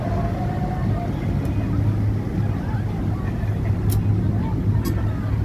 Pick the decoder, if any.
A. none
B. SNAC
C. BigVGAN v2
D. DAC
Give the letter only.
A